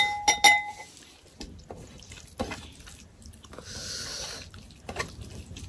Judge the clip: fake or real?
real